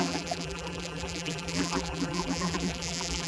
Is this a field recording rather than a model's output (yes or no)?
no